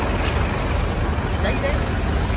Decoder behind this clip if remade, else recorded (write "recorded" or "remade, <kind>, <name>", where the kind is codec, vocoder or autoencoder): recorded